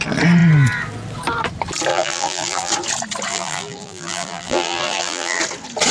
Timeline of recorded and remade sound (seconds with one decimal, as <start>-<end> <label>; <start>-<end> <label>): 0.0-1.9 recorded; 1.9-2.7 remade; 2.7-3.3 recorded; 3.3-5.4 remade; 5.4-5.9 recorded